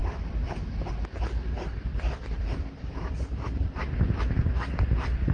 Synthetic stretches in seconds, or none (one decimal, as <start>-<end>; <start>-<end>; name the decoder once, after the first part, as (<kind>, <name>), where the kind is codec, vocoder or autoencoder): 0.0-1.1 (vocoder, BigVGAN v2); 1.9-4.2